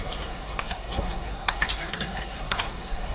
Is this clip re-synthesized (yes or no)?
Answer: yes